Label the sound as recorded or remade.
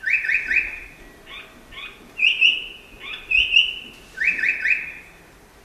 recorded